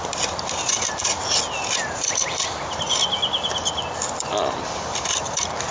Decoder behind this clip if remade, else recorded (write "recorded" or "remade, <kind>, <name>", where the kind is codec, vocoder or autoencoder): recorded